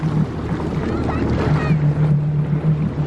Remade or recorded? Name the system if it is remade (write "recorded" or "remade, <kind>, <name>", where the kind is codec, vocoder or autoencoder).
recorded